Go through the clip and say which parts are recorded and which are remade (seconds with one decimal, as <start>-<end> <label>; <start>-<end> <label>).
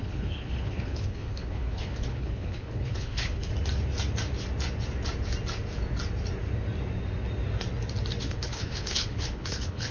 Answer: 0.0-3.5 remade; 3.5-8.2 recorded; 8.2-9.9 remade